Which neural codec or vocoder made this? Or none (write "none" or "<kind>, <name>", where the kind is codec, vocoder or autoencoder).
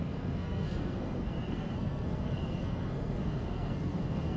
codec, SNAC